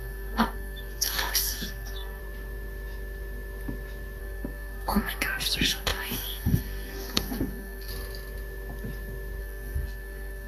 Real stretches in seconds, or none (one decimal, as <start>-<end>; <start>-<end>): 2.2-4.2; 7.9-9.4